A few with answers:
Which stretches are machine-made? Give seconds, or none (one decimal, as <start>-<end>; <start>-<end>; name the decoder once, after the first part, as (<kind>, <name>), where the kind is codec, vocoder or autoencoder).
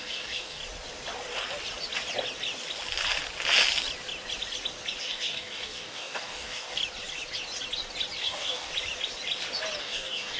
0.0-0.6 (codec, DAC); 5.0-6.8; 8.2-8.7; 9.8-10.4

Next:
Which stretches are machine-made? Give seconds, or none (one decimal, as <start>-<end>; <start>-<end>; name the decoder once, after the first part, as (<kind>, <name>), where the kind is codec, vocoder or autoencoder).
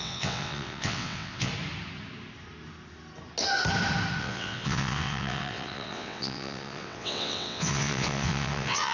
0.0-1.5 (vocoder, WaveNeXt); 4.2-8.9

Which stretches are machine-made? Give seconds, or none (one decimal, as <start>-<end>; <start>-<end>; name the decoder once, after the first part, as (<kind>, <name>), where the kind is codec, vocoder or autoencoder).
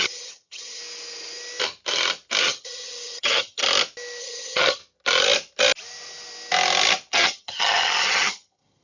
0.0-0.8 (vocoder, HiFi-GAN); 2.4-3.6; 4.2-4.8; 7.1-8.8